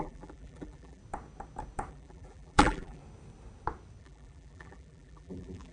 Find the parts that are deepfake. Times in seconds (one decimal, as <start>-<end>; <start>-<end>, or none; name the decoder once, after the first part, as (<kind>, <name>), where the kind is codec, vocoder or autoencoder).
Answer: 0.0-1.0 (vocoder, BigVGAN v2); 1.9-3.0; 4.0-5.7